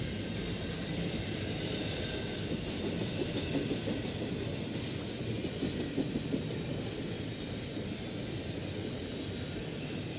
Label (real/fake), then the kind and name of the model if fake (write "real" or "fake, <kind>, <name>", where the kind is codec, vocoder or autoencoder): real